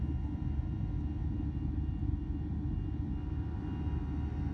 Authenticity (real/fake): real